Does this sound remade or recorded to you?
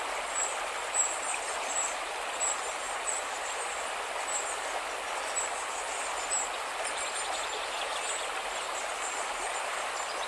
recorded